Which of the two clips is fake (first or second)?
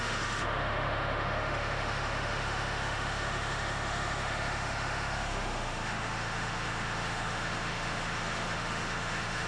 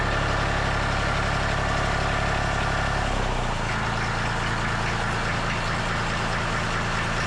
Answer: first